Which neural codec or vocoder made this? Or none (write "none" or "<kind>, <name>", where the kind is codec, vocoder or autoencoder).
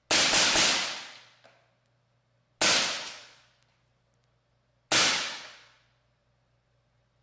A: none